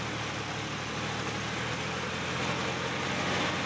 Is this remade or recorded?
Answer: recorded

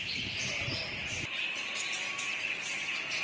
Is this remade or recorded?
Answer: recorded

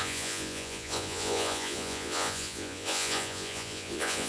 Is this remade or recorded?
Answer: remade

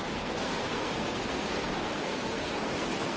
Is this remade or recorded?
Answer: remade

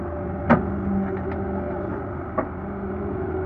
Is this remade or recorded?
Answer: recorded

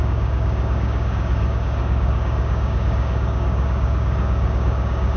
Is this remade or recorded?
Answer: remade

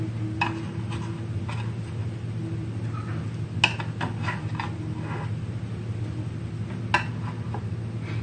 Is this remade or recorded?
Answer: recorded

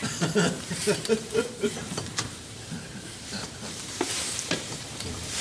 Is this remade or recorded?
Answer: remade